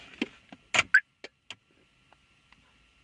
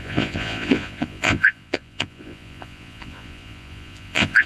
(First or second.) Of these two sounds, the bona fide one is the first